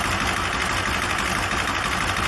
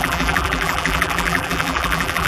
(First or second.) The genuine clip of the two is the first